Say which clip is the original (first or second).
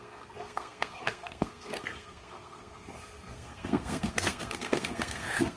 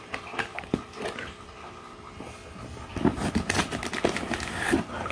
second